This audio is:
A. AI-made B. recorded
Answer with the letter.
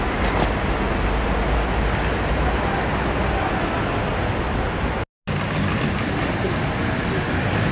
B